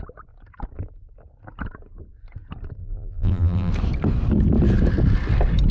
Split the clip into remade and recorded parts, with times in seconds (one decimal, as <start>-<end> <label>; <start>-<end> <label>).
0.0-2.8 recorded; 2.8-3.7 remade; 3.7-5.7 recorded